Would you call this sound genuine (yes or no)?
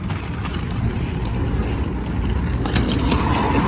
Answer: yes